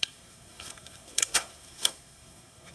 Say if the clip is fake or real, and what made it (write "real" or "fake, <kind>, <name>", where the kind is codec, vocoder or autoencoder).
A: fake, codec, SNAC